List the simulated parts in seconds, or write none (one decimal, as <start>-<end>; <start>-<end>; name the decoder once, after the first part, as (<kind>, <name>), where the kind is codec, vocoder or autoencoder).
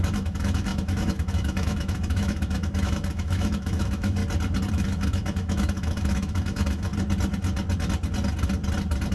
0.0-4.2 (autoencoder, DAC-VAE); 4.7-6.9